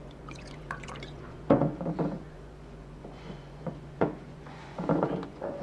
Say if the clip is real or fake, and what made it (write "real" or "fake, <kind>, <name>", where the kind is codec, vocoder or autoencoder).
fake, vocoder, Vocos